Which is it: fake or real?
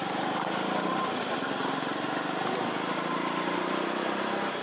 real